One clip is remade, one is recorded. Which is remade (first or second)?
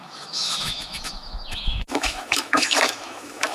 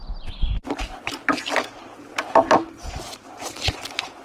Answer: first